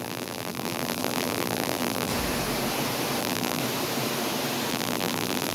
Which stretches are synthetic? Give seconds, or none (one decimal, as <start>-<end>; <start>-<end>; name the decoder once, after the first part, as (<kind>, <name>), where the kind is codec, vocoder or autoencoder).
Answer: 0.0-2.1 (vocoder, BigVGAN v2); 3.2-3.6; 4.7-5.5